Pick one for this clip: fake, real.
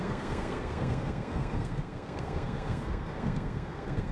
fake